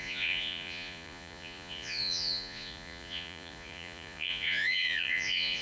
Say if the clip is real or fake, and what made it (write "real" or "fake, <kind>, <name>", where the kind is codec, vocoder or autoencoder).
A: fake, vocoder, Vocos